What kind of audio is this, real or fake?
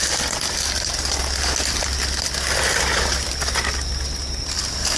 real